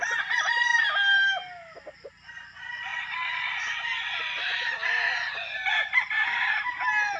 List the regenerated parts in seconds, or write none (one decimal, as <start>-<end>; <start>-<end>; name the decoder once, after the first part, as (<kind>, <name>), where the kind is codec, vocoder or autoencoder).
none